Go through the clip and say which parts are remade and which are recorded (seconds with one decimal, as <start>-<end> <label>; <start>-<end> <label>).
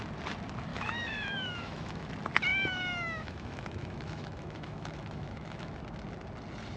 0.0-0.7 recorded; 0.7-2.1 remade; 2.1-2.5 recorded; 2.5-5.8 remade; 5.8-6.8 recorded